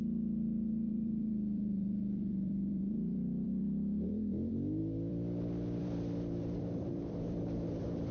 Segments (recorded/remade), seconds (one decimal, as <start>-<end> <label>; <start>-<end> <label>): 0.0-8.1 remade